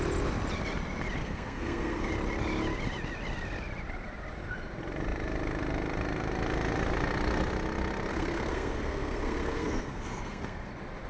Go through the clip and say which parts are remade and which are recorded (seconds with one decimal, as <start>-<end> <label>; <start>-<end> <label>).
0.0-1.2 recorded; 1.2-2.1 remade; 2.1-8.1 recorded; 8.1-10.7 remade; 10.7-11.1 recorded